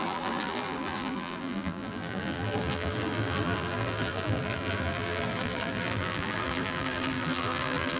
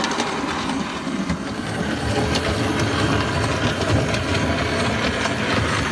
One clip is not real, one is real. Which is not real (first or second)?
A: first